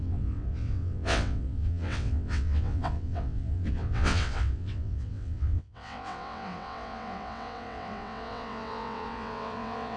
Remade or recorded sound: remade